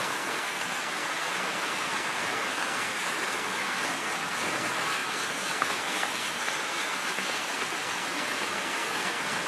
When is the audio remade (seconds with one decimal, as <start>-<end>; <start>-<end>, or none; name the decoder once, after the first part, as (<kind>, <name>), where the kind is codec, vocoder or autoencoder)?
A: 0.0-9.5 (codec, SNAC)

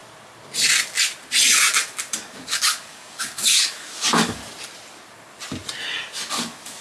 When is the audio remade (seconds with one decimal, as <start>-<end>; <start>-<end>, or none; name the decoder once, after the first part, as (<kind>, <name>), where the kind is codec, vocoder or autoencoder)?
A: 2.2-4.4 (codec, DAC); 6.3-6.8

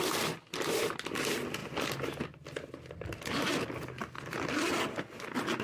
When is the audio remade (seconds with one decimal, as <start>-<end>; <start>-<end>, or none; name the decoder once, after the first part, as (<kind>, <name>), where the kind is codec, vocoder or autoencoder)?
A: none

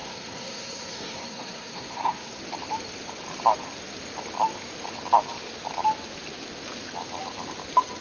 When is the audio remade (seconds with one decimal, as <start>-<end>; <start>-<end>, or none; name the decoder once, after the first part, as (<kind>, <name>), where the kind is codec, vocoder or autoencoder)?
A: 0.0-2.4 (codec, SNAC)